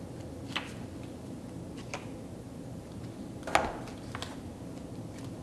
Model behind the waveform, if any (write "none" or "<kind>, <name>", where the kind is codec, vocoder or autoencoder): none